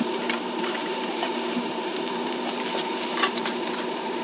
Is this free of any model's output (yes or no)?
no